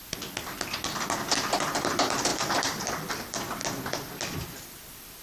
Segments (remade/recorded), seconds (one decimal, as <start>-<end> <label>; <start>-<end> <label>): 0.0-1.6 recorded; 1.6-3.6 remade; 3.6-4.6 recorded; 4.6-5.2 remade